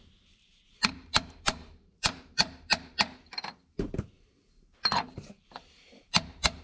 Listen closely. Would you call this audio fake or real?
fake